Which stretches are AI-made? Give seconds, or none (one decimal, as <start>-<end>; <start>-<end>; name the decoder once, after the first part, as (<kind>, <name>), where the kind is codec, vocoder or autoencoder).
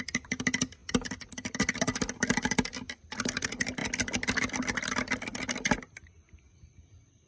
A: none